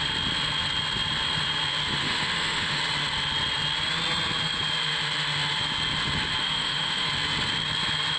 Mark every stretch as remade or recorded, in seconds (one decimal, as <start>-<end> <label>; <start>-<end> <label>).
0.0-2.0 recorded; 2.0-2.8 remade; 2.8-6.4 recorded; 6.4-7.1 remade; 7.1-8.2 recorded